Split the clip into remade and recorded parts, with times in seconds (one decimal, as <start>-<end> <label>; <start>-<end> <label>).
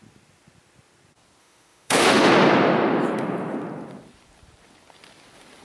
0.0-1.4 recorded; 1.4-2.3 remade; 2.3-5.6 recorded